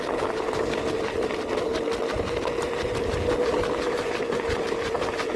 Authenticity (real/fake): real